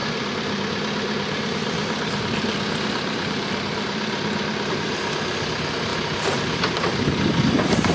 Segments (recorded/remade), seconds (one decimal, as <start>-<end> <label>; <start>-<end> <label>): 0.0-7.9 remade